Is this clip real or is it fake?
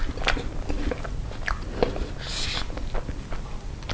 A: real